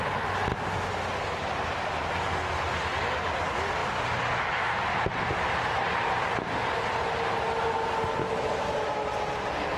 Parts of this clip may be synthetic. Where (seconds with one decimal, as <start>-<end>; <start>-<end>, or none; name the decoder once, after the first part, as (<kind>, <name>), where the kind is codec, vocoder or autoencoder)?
none